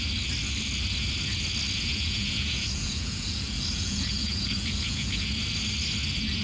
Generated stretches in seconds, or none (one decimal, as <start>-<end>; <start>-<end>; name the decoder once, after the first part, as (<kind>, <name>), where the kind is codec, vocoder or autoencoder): 1.8-5.3 (vocoder, Vocos)